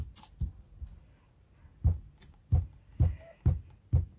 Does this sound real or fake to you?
real